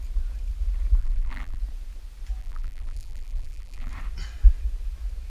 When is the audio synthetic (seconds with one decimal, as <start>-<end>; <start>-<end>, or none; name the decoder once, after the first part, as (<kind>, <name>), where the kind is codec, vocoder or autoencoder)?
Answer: 1.0-1.6 (vocoder, BigVGAN v2); 2.4-3.9